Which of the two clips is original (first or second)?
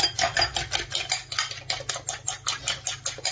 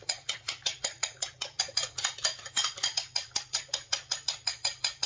first